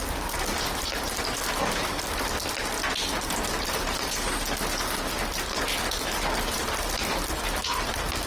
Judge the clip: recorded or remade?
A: recorded